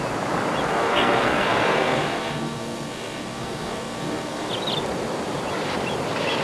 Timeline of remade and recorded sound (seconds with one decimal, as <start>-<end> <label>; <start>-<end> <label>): 0.0-0.7 recorded; 0.7-4.5 remade; 4.5-6.4 recorded